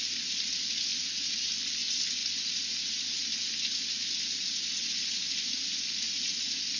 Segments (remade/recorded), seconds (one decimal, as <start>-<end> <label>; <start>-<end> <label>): 0.0-0.9 recorded; 0.9-1.6 remade; 1.6-6.8 recorded

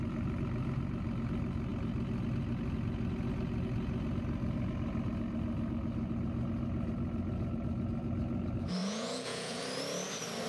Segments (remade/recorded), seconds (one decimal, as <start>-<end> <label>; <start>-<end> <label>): 0.0-8.8 recorded; 8.8-9.6 remade; 9.6-10.5 recorded

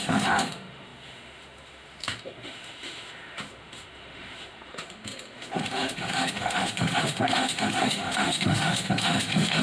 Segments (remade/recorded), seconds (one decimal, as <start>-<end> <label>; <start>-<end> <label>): 0.0-9.6 remade

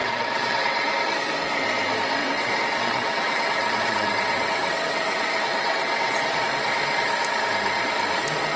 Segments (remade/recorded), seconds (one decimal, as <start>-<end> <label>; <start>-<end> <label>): 0.0-0.9 remade; 0.9-2.2 recorded; 2.2-6.4 remade; 6.4-8.6 recorded

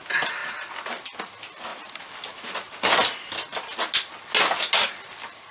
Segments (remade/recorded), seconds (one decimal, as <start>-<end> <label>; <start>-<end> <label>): 0.0-5.5 recorded